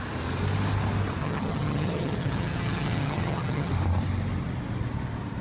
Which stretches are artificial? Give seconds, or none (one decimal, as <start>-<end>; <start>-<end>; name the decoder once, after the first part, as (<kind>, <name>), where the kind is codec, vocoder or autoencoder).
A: 1.2-3.7 (vocoder, HiFi-GAN)